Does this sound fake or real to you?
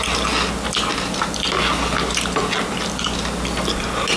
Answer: real